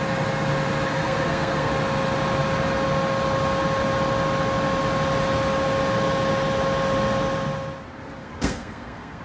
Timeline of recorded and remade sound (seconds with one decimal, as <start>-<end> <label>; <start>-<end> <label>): 0.0-0.9 recorded; 0.9-1.7 remade; 1.7-8.2 recorded; 8.2-9.2 remade